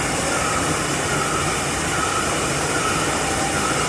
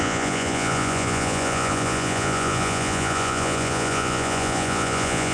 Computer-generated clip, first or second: second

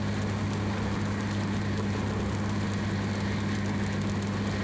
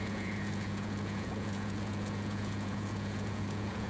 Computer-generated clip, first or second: second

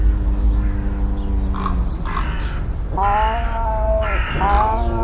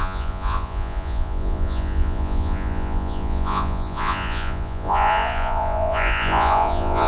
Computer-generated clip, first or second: second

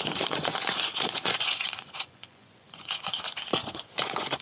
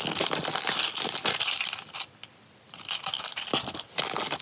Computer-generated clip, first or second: first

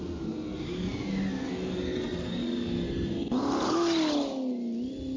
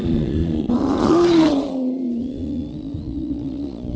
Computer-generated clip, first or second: second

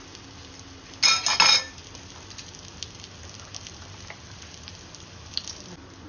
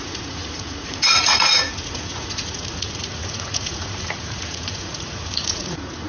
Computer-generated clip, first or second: second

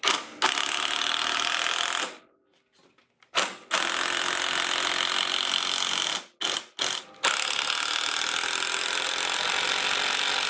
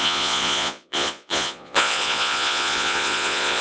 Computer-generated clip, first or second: second